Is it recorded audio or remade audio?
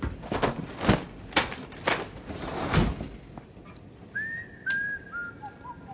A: recorded